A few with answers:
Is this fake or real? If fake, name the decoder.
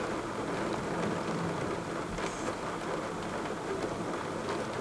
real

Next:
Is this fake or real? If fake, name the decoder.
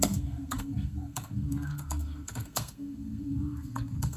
fake, codec, SNAC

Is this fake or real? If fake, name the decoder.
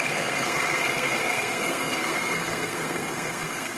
fake, codec, SNAC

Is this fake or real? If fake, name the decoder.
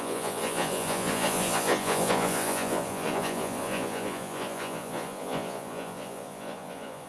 fake, vocoder, Vocos